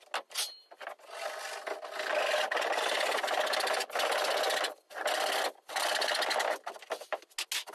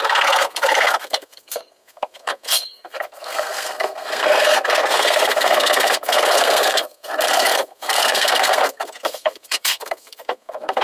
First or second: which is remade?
second